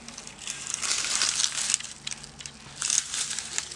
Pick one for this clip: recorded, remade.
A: recorded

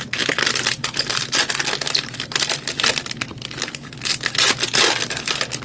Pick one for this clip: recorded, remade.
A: recorded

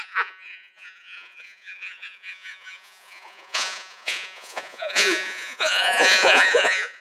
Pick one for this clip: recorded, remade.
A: remade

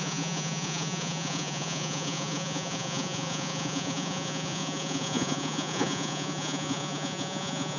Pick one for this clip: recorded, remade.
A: remade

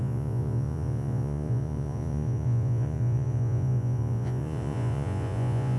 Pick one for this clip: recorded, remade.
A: remade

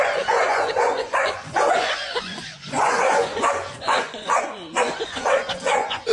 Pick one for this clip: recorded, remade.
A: remade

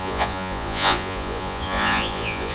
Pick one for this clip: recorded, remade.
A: remade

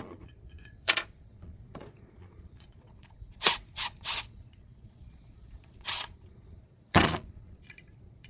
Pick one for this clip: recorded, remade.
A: remade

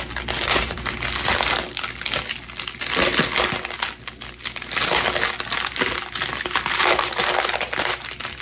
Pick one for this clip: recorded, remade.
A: recorded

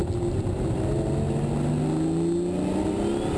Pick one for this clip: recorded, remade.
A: recorded